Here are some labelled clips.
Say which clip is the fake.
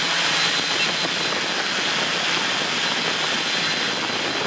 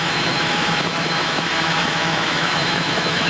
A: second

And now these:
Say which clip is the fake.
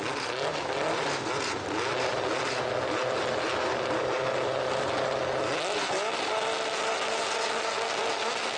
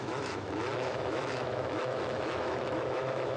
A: second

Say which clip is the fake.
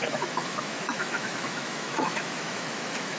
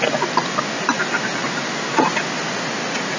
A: first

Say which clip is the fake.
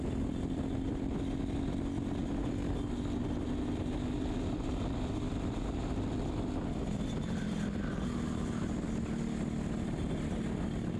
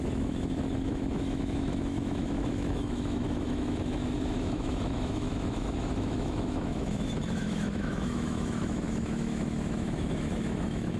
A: second